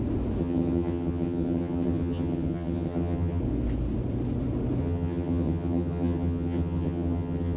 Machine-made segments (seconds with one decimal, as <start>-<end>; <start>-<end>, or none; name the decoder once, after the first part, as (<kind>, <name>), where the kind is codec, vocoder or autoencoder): 0.4-3.4 (vocoder, HiFi-GAN); 4.8-7.6